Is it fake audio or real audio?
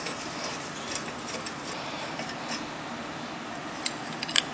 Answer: real